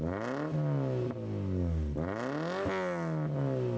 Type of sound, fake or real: real